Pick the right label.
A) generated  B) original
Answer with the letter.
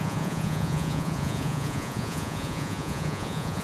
A